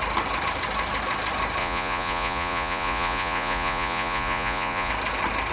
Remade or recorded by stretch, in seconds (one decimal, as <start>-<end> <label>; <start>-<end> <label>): 0.0-1.6 recorded; 1.6-4.9 remade; 4.9-5.5 recorded